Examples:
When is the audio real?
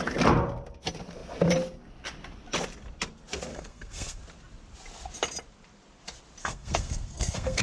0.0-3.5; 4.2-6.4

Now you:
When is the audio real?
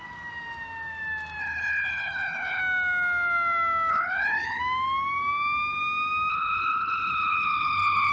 0.0-1.4; 2.6-3.9; 4.6-6.3